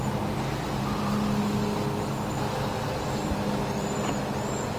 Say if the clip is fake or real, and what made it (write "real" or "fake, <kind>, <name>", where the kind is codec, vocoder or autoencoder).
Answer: fake, vocoder, BigVGAN v2